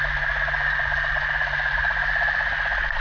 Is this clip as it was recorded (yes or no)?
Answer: yes